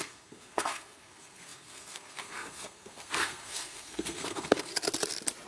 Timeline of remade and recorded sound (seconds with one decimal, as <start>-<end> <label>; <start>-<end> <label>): 0.0-4.7 remade; 4.7-5.5 recorded